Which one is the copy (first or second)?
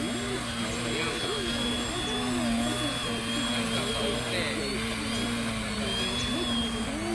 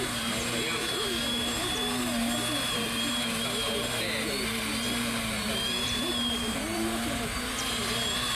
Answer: second